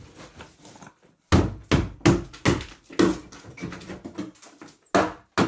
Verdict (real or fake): real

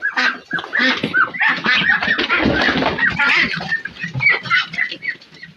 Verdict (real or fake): real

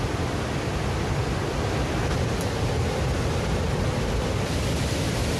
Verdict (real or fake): real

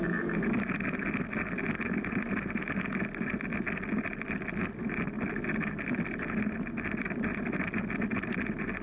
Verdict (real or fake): real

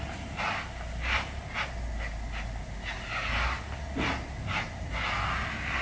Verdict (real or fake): real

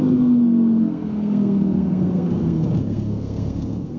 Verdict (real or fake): fake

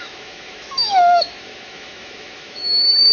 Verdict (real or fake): fake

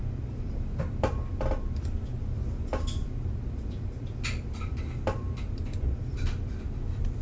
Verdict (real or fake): fake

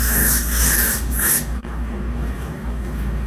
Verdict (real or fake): fake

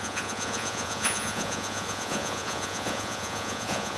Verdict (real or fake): fake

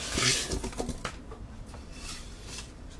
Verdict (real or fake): real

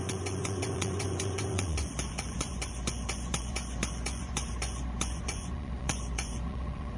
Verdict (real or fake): fake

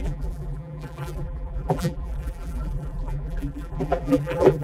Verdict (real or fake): fake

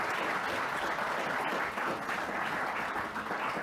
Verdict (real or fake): real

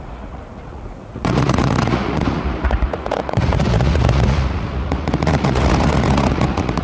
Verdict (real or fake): fake